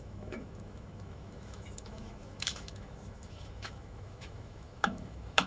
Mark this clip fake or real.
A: fake